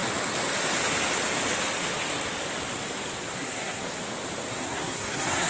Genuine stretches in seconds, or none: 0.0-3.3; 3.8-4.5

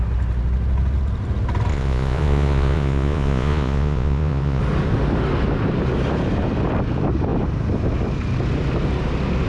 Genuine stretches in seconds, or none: 0.0-1.7; 4.6-9.5

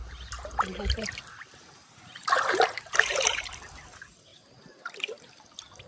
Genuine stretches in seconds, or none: 3.5-5.9

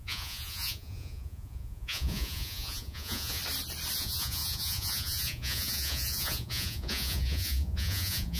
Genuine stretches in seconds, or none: 3.4-4.0

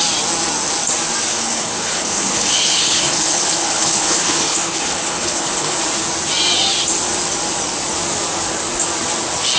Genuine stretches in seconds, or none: 0.0-1.3; 5.8-9.6